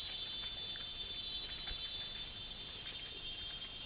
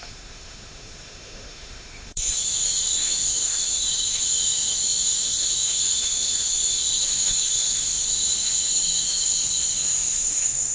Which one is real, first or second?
first